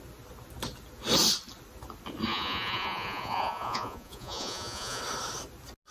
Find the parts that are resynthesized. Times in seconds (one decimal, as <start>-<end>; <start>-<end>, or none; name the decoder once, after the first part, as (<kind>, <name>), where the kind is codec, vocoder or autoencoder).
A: 2.3-5.0 (vocoder, Vocos)

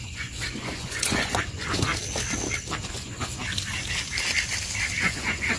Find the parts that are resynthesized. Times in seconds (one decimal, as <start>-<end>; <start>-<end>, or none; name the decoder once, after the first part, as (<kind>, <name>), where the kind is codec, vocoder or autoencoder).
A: 0.0-1.9 (vocoder, Vocos); 2.9-3.4; 5.0-5.6

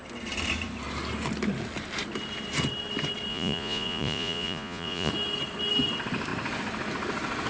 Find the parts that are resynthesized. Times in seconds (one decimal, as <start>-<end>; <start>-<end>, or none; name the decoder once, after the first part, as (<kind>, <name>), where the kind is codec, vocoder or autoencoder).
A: 3.3-5.1 (vocoder, Vocos)

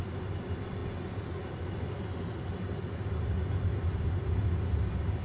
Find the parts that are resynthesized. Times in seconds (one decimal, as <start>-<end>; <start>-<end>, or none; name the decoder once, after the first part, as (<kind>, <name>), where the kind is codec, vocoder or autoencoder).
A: none